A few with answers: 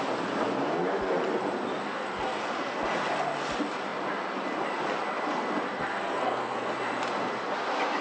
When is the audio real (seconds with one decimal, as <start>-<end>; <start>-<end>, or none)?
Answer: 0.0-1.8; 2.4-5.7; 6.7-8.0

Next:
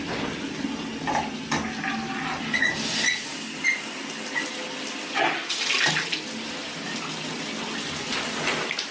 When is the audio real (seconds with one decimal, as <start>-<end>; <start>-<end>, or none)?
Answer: 0.0-8.9

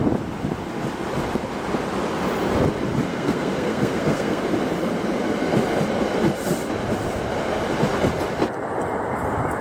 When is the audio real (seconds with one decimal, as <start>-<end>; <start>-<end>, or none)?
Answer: 0.0-3.1; 4.4-9.6